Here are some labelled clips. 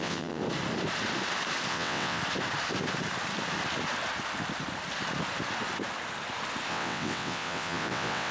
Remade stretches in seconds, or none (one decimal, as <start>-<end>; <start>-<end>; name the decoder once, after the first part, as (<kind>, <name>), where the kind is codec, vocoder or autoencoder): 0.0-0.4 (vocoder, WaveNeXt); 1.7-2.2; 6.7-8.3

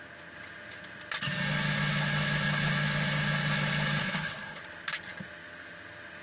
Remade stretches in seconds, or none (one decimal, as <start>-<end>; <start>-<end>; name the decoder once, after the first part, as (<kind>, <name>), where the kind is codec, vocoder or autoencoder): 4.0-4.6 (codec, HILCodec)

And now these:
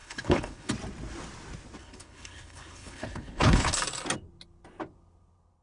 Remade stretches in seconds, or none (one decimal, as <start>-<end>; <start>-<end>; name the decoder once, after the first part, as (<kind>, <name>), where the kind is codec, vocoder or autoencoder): 0.0-0.7 (codec, HILCodec); 1.8-3.8

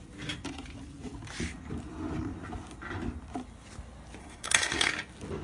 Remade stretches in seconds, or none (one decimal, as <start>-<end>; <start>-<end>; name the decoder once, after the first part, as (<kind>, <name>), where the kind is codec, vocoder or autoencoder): 4.2-4.9 (codec, SNAC)

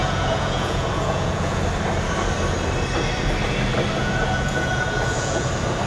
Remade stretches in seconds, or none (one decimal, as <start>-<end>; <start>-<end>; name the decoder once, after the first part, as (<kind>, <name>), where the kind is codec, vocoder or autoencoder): 0.0-1.6 (vocoder, Vocos); 4.0-5.5

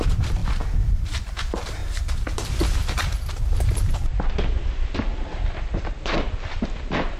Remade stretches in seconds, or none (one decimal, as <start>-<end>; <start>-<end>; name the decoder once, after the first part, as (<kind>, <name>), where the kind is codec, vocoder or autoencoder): 1.8-6.1 (vocoder, BigVGAN v2)

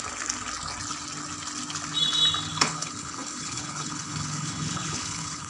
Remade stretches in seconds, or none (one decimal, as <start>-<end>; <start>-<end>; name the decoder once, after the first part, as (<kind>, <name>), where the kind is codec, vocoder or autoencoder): 2.5-5.5 (codec, HILCodec)